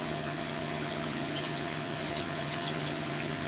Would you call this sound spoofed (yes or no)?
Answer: yes